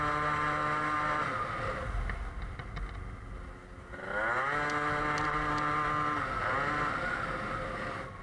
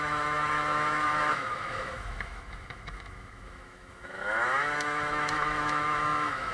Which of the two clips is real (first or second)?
first